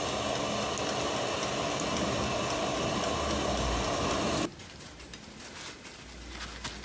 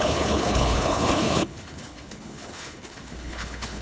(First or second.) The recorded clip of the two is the first